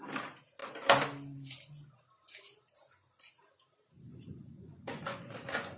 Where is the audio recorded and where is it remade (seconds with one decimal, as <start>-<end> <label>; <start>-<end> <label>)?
0.0-4.1 recorded; 4.1-5.8 remade